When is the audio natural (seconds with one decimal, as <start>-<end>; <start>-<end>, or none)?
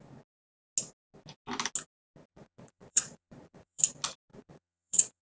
0.0-2.3; 3.8-4.3